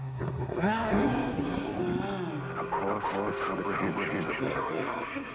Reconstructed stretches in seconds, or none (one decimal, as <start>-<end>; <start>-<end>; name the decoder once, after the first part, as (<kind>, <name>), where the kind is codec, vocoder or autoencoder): 0.0-1.8 (codec, SNAC); 4.4-5.3